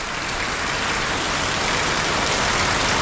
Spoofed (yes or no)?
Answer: no